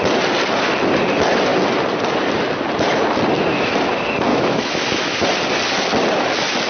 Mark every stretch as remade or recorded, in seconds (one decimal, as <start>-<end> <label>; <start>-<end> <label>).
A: 0.0-4.3 recorded; 4.3-5.2 remade; 5.2-6.7 recorded